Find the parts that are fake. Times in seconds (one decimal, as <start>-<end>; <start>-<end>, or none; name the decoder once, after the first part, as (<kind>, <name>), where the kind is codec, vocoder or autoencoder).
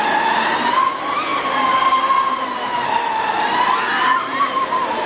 2.6-3.4 (autoencoder, DAC-VAE)